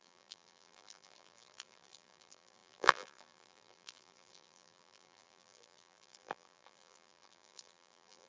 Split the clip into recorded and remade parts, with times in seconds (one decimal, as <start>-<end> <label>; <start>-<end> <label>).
0.0-8.3 remade

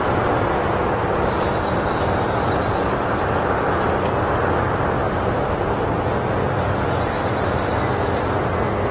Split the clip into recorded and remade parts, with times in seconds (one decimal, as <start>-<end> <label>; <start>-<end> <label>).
0.0-5.0 recorded; 5.0-5.7 remade; 5.7-8.9 recorded

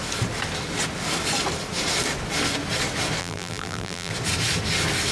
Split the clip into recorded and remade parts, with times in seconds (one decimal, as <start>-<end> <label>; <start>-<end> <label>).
0.0-3.2 recorded; 3.2-4.1 remade; 4.1-5.1 recorded

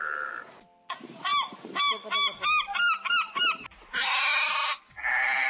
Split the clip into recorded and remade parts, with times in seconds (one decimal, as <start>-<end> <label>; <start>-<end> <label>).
0.0-5.5 recorded

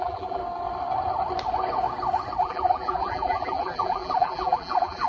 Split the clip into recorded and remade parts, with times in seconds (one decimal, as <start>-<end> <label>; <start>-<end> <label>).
0.0-0.4 remade; 0.4-2.4 recorded; 2.4-5.1 remade